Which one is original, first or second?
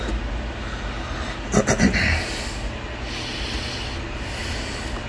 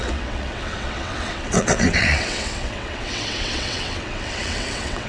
first